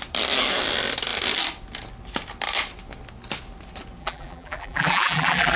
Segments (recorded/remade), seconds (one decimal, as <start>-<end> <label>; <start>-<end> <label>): 0.0-4.0 recorded; 4.0-5.6 remade